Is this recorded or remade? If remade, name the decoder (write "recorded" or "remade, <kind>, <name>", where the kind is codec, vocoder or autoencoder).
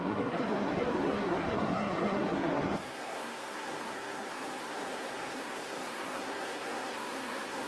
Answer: remade, codec, SNAC